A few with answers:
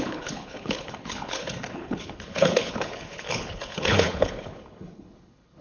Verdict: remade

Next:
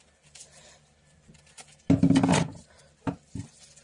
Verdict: recorded